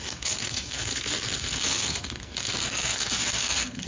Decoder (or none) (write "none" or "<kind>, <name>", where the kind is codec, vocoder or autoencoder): codec, SNAC